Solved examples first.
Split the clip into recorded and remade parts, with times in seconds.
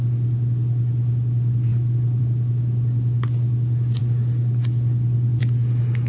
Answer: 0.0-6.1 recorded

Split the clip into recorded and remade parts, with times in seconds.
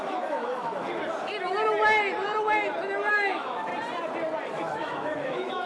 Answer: 0.0-1.0 remade; 1.0-3.1 recorded; 3.1-3.7 remade; 3.7-4.5 recorded; 4.5-5.7 remade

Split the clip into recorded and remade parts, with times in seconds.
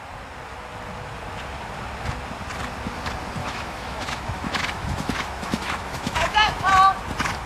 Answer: 0.0-3.4 recorded; 3.4-6.7 remade; 6.7-7.5 recorded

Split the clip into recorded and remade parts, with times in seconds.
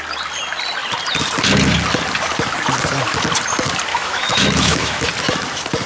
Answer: 0.0-3.9 recorded; 3.9-5.1 remade; 5.1-5.9 recorded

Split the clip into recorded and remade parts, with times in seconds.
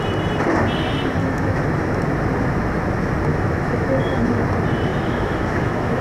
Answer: 0.0-1.2 recorded; 1.2-2.0 remade; 2.0-3.3 recorded; 3.3-4.4 remade; 4.4-4.9 recorded; 4.9-6.0 remade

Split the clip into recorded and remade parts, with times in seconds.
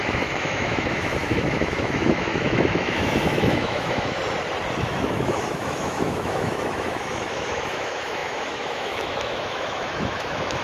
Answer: 0.0-4.2 remade; 4.2-4.8 recorded; 4.8-10.6 remade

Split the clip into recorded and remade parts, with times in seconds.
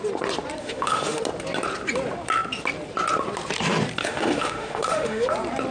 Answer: 0.0-0.6 recorded; 0.6-1.2 remade; 1.2-4.0 recorded; 4.0-5.3 remade; 5.3-5.7 recorded